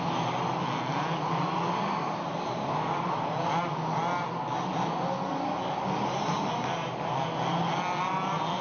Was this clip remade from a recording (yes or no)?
no